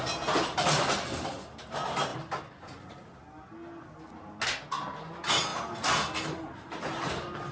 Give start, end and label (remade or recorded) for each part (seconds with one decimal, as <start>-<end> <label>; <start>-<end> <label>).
0.0-7.5 recorded